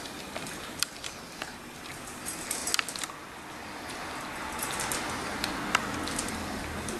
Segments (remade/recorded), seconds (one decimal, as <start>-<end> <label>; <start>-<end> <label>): 0.0-2.6 remade; 2.6-6.3 recorded; 6.3-7.0 remade